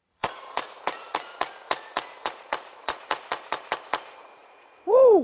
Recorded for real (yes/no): no